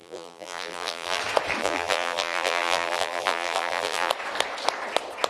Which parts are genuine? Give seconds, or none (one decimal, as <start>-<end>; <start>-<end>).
1.2-1.6; 4.1-5.3